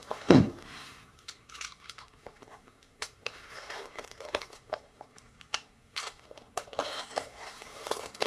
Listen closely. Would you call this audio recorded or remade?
remade